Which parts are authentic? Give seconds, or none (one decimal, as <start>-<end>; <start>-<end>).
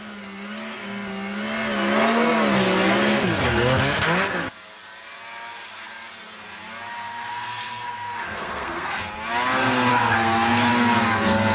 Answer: 0.0-6.9; 9.0-9.9; 10.7-11.5